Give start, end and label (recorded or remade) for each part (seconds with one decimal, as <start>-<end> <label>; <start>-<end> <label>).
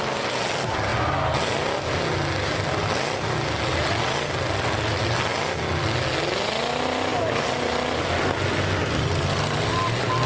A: 0.0-10.3 recorded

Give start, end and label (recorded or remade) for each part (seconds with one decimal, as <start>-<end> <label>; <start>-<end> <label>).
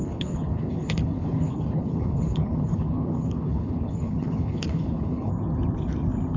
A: 0.0-5.3 remade; 5.3-6.4 recorded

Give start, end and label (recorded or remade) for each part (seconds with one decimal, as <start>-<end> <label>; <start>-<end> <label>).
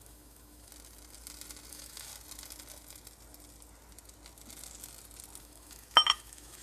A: 0.0-0.7 remade; 0.7-1.7 recorded; 1.7-2.1 remade; 2.1-5.4 recorded; 5.4-6.6 remade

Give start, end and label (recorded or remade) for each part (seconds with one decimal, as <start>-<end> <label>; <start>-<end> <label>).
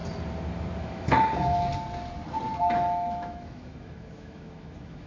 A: 0.0-0.8 recorded; 0.8-1.7 remade; 1.7-2.6 recorded; 2.6-5.1 remade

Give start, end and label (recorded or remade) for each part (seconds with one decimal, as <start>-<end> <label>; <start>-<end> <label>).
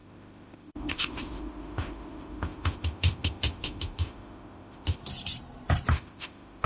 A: 0.0-5.0 remade; 5.0-5.9 recorded; 5.9-6.7 remade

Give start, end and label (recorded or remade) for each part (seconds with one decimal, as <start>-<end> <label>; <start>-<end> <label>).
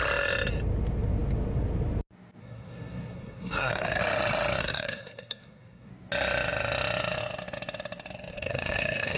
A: 0.0-2.4 recorded; 2.4-4.0 remade; 4.0-4.6 recorded; 4.6-5.9 remade; 5.9-8.3 recorded; 8.3-9.2 remade